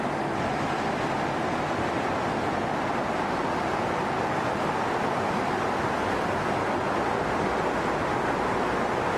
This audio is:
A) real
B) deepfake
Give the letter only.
A